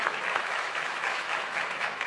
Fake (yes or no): yes